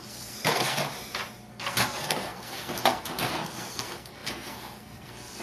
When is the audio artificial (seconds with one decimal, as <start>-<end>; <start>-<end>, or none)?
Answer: 0.0-0.8; 1.5-5.4